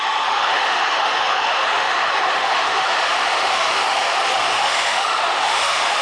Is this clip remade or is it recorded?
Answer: remade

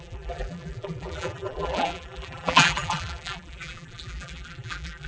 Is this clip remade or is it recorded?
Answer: remade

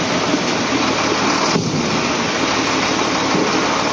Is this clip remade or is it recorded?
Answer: recorded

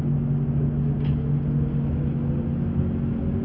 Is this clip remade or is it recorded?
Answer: recorded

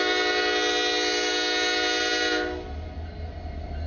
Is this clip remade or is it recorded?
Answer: recorded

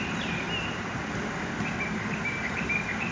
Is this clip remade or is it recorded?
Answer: recorded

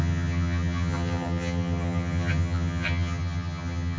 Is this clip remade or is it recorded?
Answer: remade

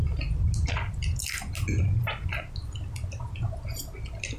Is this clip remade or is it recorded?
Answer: recorded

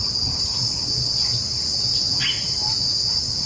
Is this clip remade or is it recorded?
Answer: recorded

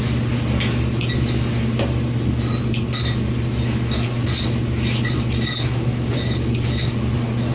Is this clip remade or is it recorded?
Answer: recorded